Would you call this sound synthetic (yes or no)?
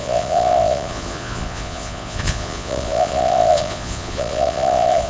yes